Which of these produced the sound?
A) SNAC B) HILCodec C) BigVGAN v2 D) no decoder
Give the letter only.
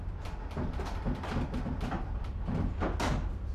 D